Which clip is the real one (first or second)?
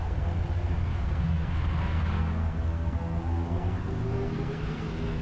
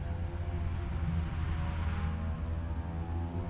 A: second